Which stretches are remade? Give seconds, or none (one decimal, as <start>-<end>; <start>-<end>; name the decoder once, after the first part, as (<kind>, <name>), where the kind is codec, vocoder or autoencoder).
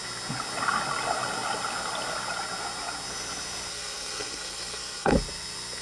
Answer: 3.7-5.1 (codec, SNAC)